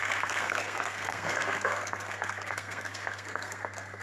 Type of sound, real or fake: fake